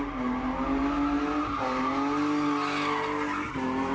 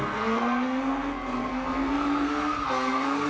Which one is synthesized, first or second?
second